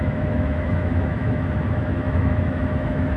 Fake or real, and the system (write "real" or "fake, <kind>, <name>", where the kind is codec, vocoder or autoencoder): fake, autoencoder, DAC-VAE